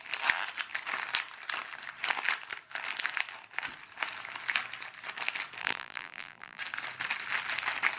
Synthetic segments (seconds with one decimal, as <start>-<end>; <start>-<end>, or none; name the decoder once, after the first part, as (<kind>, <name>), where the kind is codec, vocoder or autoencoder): 5.6-6.6 (vocoder, BigVGAN v2)